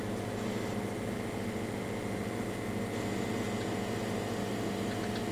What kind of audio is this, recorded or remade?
recorded